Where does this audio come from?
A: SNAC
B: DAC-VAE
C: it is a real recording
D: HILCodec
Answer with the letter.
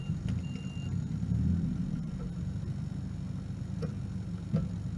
C